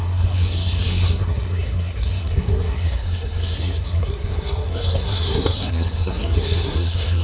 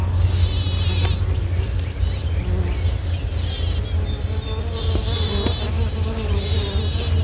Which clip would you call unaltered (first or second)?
second